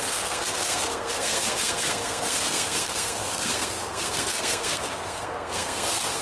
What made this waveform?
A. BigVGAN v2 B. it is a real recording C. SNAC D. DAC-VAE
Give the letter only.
C